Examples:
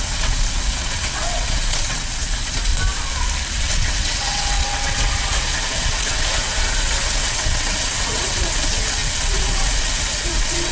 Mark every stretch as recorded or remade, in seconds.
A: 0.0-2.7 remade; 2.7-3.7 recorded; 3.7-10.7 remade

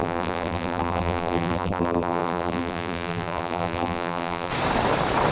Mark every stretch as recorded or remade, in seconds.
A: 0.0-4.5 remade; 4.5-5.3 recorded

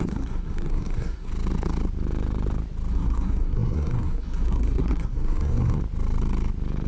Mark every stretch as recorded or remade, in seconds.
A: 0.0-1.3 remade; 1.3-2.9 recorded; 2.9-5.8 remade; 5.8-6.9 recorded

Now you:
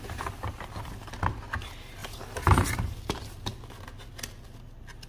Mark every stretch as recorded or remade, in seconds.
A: 0.0-2.0 recorded; 2.0-3.0 remade; 3.0-5.1 recorded